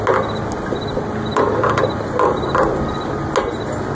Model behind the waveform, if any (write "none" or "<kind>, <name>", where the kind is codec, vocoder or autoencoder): none